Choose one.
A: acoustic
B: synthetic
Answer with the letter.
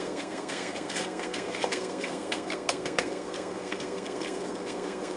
B